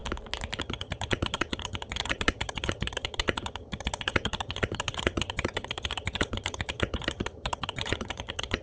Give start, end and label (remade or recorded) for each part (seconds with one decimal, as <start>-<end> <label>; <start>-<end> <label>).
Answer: 0.0-0.6 recorded; 0.6-8.6 remade